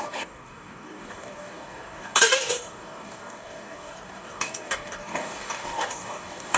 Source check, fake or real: fake